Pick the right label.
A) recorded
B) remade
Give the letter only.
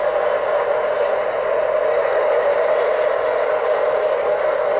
A